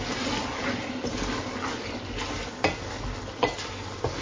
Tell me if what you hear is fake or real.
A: real